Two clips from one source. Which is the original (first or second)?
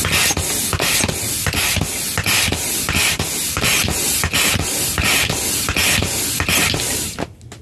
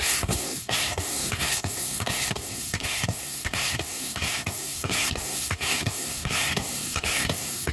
first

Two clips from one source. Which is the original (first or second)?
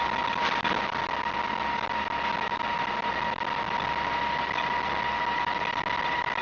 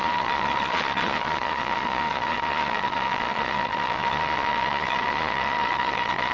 first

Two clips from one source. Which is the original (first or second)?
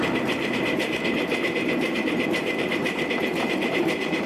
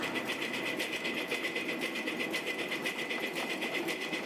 second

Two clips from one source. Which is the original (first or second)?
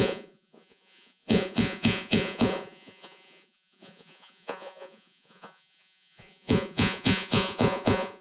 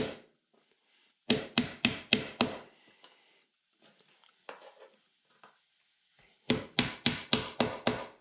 second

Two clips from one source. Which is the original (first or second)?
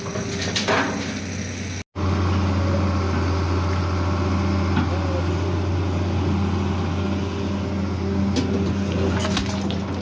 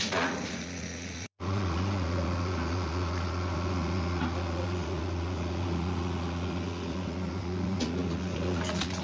first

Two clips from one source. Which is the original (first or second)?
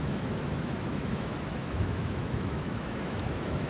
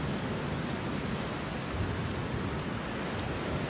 second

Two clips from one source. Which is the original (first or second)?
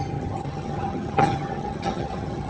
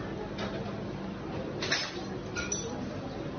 second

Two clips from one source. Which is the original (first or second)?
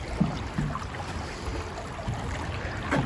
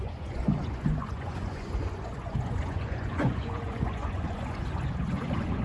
first